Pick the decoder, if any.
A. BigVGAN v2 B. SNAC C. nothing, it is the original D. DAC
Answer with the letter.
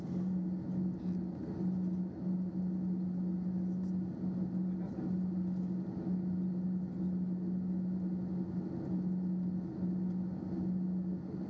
C